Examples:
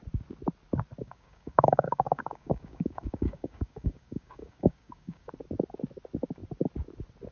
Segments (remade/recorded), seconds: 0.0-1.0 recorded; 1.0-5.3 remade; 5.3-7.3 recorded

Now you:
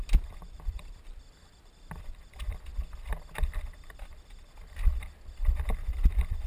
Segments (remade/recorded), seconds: 0.0-2.7 remade; 2.7-5.6 recorded; 5.6-6.5 remade

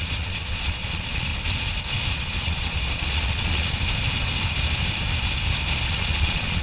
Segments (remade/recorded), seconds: 0.0-1.3 remade; 1.3-2.1 recorded; 2.1-3.8 remade; 3.8-5.9 recorded; 5.9-6.6 remade

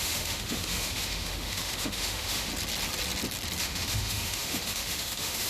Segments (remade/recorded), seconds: 0.0-2.5 remade; 2.5-3.6 recorded; 3.6-5.5 remade

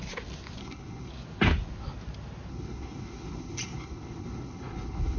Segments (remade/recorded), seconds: 0.0-0.6 recorded; 0.6-1.1 remade; 1.1-2.5 recorded; 2.5-5.2 remade